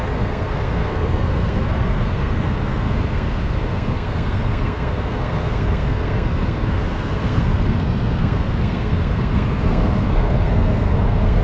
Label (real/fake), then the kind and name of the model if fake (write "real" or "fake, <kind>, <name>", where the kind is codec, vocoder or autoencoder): fake, codec, SNAC